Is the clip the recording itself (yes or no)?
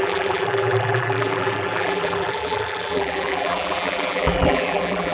no